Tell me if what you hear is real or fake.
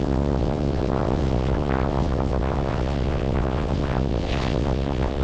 fake